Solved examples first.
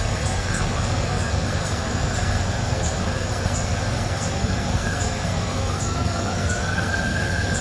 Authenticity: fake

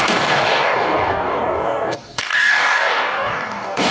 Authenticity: fake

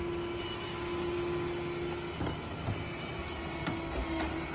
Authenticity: real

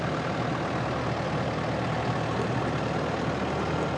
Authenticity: real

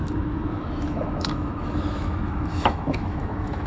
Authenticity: fake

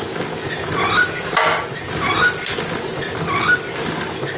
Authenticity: real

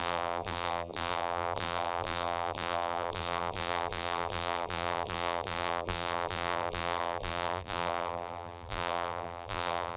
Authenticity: fake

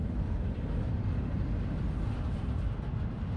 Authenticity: real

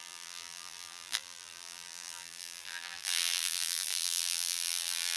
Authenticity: fake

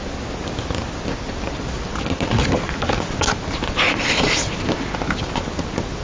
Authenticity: real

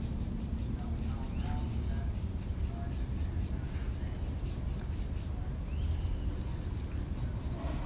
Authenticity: real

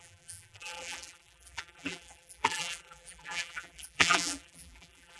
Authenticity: fake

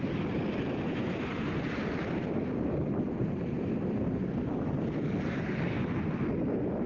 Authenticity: real